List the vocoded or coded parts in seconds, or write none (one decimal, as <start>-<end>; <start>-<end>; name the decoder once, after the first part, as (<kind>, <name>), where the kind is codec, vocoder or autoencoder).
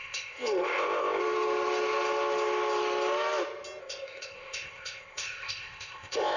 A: 0.0-1.2 (codec, ZipCodec); 3.8-6.4